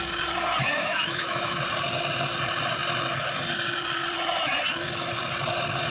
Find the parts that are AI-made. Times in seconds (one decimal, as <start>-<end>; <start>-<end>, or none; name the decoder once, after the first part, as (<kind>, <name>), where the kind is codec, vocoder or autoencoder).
0.6-1.6 (autoencoder, DAC-VAE)